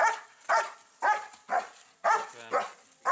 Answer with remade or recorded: recorded